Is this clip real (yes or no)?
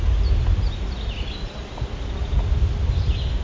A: yes